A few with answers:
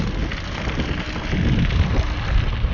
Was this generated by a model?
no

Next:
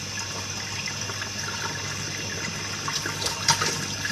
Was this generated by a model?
no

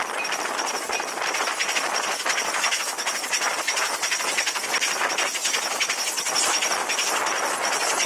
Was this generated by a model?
no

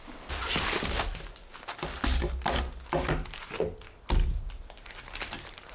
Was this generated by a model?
no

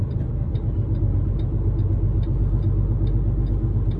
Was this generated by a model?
no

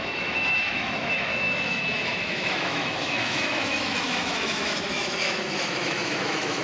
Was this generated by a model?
yes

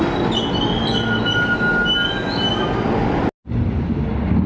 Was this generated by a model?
no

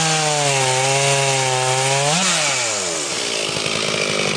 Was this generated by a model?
no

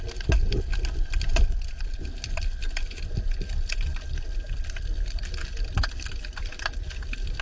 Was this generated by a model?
no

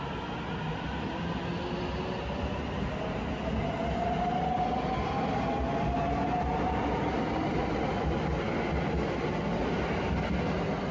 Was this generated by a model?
no